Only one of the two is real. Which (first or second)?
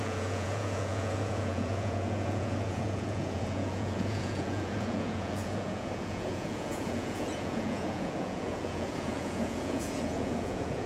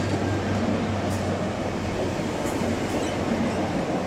second